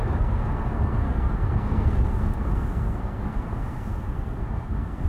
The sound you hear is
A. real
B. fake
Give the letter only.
B